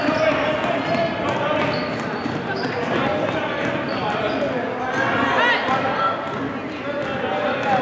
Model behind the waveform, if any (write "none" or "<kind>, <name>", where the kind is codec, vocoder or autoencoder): none